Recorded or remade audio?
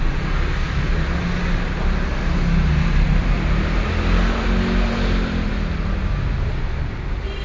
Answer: recorded